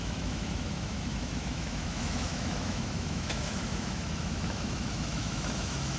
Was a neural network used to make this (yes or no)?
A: yes